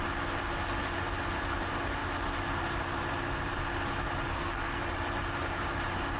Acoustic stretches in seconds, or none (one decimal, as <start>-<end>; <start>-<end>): 0.0-4.3; 4.8-6.2